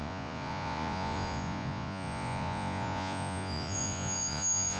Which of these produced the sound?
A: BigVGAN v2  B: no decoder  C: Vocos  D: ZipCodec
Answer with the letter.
C